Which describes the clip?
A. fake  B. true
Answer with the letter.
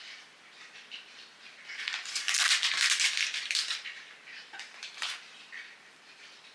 B